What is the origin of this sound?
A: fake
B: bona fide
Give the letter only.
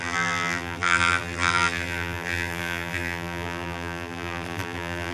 A